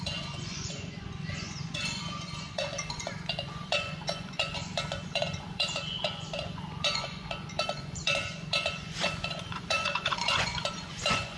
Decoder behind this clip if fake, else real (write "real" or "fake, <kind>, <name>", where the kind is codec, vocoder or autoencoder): fake, vocoder, Vocos